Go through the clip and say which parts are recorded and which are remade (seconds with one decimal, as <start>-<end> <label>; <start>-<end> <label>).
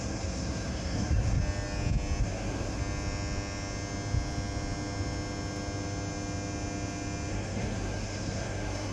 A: 0.0-1.4 remade; 1.4-2.2 recorded; 2.2-2.8 remade; 2.8-7.3 recorded; 7.3-8.9 remade